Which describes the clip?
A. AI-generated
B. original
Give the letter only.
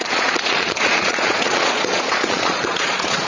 A